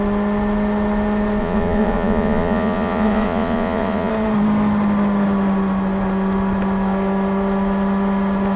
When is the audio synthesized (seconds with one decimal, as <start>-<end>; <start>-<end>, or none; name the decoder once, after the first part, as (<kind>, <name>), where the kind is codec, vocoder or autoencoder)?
1.4-4.1 (vocoder, Vocos)